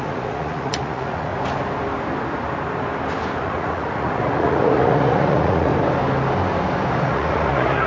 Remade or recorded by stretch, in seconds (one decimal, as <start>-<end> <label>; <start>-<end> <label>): 0.0-1.3 remade; 1.3-3.4 recorded; 3.4-5.7 remade; 5.7-7.0 recorded; 7.0-7.9 remade